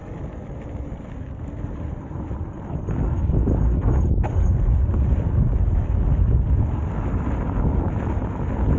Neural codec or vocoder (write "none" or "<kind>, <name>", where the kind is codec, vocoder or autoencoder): none